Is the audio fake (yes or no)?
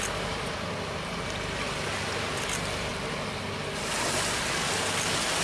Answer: no